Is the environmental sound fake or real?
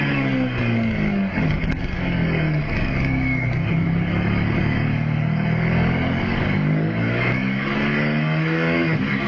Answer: fake